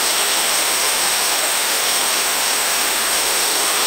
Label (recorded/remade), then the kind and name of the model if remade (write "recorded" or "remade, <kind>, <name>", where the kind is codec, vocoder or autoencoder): remade, autoencoder, DAC-VAE